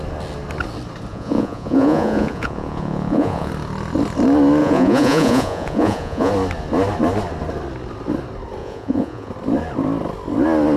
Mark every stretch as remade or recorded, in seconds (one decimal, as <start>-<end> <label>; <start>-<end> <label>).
0.0-1.1 recorded; 1.1-3.5 remade; 3.5-4.6 recorded; 4.6-6.3 remade; 6.3-8.6 recorded; 8.6-9.3 remade; 9.3-10.8 recorded

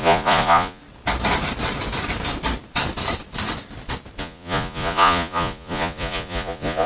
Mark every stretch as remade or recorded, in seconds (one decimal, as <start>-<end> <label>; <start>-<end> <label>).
0.0-0.8 remade; 0.8-4.2 recorded; 4.2-6.9 remade

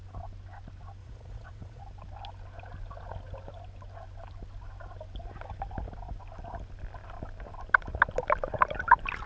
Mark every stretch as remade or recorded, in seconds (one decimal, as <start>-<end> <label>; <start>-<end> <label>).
0.0-1.0 recorded; 1.0-1.8 remade; 1.8-9.3 recorded

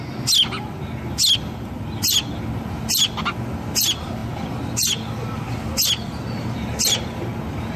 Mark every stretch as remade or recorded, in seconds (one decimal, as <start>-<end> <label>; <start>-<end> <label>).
0.0-7.8 recorded

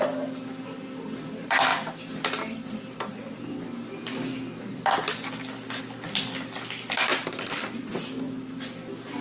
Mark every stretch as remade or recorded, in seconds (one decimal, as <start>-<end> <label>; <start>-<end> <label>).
0.0-9.2 recorded

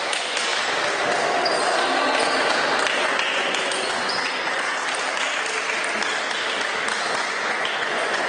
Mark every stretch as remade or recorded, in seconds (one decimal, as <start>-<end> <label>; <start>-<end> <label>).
0.0-0.5 remade; 0.5-3.0 recorded; 3.0-4.8 remade; 4.8-7.1 recorded; 7.1-8.3 remade

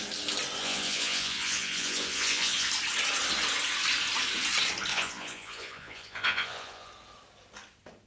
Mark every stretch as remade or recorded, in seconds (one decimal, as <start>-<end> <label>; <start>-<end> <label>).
0.0-0.6 recorded; 0.6-2.7 remade; 2.7-4.9 recorded; 4.9-6.9 remade; 6.9-8.1 recorded